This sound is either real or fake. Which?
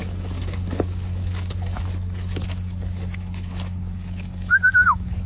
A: fake